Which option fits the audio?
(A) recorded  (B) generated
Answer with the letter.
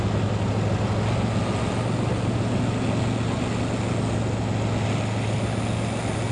A